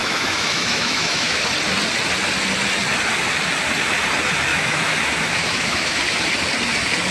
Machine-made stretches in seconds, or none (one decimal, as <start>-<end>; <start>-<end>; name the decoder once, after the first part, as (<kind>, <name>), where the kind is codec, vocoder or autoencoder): 0.0-1.4 (autoencoder, DAC-VAE); 4.5-6.0